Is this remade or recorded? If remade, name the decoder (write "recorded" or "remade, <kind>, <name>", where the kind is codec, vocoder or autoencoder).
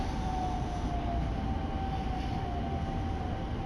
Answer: recorded